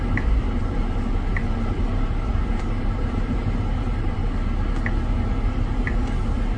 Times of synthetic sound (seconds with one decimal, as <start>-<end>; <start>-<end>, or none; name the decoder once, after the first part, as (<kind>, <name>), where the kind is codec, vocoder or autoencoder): 0.0-4.2 (vocoder, BigVGAN v2)